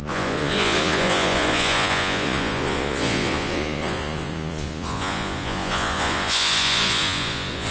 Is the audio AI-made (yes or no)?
yes